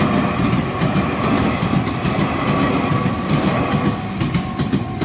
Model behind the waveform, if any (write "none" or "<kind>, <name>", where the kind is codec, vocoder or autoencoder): none